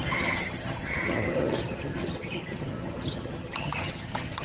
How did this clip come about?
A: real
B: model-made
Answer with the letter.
B